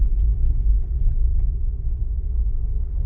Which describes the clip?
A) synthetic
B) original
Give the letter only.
B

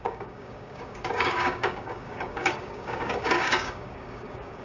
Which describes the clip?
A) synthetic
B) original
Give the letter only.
A